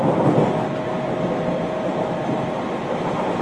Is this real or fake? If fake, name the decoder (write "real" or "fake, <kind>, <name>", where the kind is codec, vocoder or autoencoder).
real